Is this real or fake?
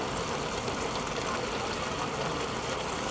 real